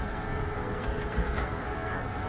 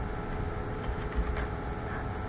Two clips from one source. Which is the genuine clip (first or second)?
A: second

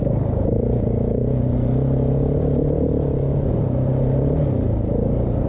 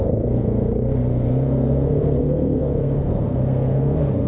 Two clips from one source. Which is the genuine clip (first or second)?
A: first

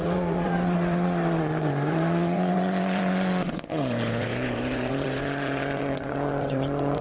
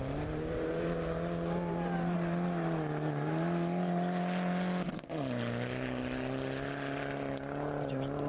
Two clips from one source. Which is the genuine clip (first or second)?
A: second